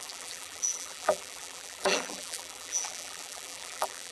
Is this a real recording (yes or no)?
no